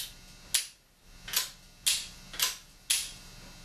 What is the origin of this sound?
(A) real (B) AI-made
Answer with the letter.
A